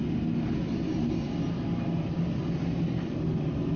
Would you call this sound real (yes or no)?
yes